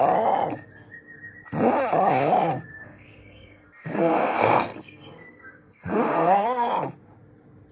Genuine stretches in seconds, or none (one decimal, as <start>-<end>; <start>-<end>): 0.0-2.7; 6.7-7.7